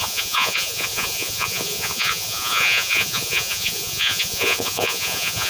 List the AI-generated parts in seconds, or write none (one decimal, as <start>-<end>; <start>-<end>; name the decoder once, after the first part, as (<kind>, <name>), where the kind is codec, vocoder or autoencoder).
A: 0.0-5.5 (vocoder, Vocos)